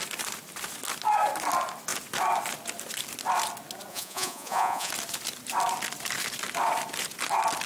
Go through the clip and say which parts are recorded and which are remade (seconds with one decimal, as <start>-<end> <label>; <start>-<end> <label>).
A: 0.0-3.9 recorded; 3.9-4.9 remade; 4.9-7.7 recorded